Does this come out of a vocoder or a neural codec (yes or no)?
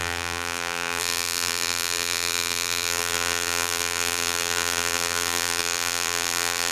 yes